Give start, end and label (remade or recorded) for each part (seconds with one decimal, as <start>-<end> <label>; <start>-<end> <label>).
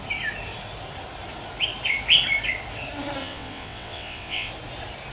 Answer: 0.0-3.2 recorded; 3.2-4.5 remade; 4.5-5.1 recorded